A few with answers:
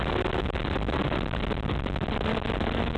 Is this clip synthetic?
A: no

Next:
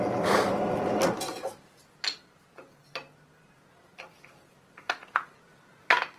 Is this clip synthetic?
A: yes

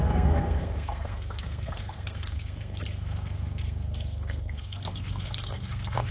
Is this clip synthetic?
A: yes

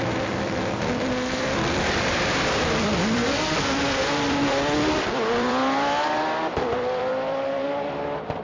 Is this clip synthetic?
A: yes